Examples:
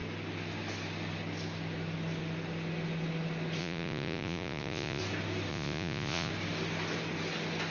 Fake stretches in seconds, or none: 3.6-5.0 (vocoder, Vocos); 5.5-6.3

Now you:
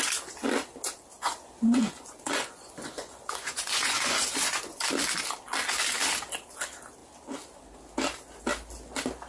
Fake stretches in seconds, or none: 1.1-4.8 (vocoder, Vocos)

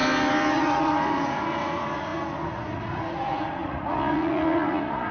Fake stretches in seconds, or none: 0.5-5.1 (vocoder, Vocos)

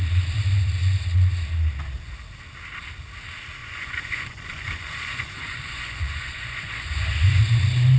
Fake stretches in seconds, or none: 3.6-7.4 (vocoder, Vocos)

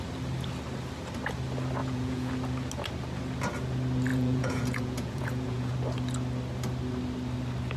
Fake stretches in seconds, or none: 1.8-2.3 (vocoder, Vocos); 4.1-5.7